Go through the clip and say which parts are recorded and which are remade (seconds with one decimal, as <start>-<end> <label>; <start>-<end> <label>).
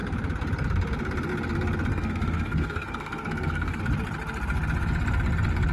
0.0-1.9 recorded; 1.9-3.8 remade; 3.8-5.7 recorded